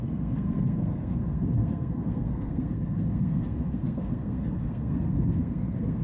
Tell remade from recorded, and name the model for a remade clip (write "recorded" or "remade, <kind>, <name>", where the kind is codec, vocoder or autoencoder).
remade, codec, SNAC